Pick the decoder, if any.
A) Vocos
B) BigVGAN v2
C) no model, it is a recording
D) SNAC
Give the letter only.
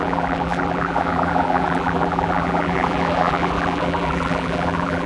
B